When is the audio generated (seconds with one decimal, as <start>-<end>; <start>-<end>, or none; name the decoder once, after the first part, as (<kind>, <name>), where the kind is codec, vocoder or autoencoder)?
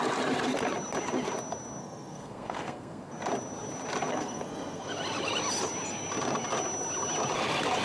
1.8-3.1 (codec, SNAC); 4.1-4.9